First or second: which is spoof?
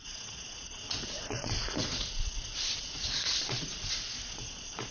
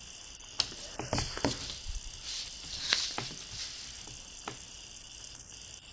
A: first